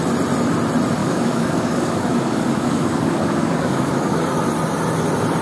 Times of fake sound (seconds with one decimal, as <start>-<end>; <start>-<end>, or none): 1.0-4.2